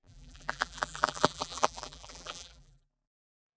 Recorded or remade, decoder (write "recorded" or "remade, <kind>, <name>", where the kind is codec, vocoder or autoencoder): remade, vocoder, BigVGAN v2